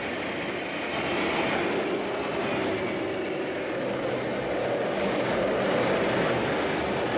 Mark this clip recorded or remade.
recorded